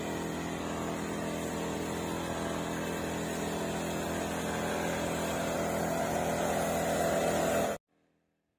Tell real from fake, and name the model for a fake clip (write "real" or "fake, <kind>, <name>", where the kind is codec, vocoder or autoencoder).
real